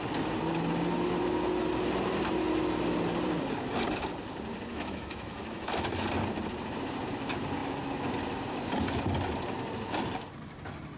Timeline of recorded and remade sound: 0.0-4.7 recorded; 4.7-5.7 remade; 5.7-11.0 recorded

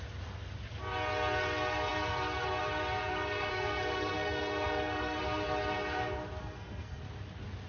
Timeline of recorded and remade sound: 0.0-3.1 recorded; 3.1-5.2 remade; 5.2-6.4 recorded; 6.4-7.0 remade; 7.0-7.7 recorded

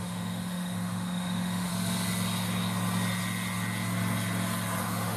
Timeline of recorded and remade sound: 0.0-1.7 remade; 1.7-4.8 recorded; 4.8-5.2 remade

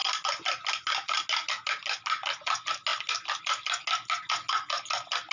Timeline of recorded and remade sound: 0.0-5.3 recorded